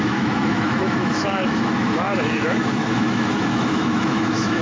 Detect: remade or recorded remade